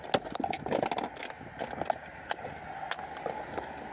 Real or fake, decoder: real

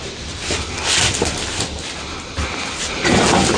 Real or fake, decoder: real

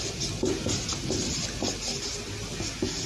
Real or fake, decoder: real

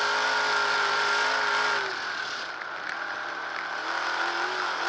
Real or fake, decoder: real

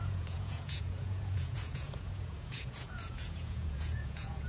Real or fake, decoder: fake, vocoder, Vocos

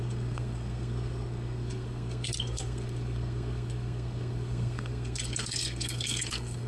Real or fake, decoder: fake, codec, SNAC